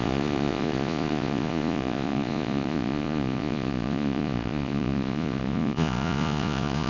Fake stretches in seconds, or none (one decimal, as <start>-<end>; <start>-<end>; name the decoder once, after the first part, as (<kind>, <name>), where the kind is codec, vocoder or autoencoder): 0.0-6.9 (vocoder, Vocos)